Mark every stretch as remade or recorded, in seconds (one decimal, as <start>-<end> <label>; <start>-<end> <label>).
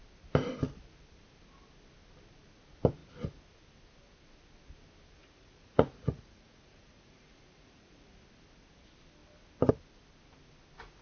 0.0-5.2 recorded; 5.2-8.1 remade; 8.1-11.0 recorded